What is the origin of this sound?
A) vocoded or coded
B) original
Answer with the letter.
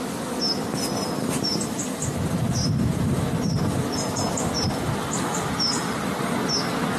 B